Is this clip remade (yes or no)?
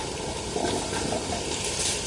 no